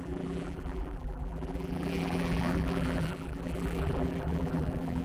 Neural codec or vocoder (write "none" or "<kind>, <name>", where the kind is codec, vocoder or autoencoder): vocoder, BigVGAN v2